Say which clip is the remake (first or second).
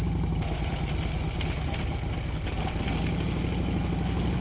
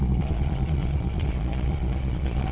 second